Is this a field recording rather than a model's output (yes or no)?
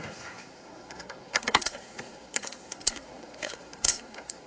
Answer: no